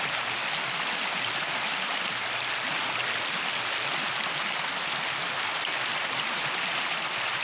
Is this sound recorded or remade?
recorded